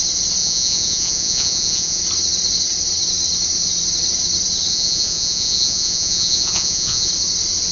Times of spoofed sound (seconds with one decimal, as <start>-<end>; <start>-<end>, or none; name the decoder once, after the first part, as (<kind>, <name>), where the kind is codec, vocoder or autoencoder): 0.4-2.0 (vocoder, Vocos); 4.7-7.1